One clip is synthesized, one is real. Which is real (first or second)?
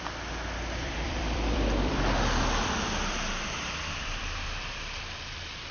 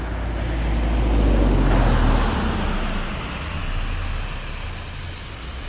second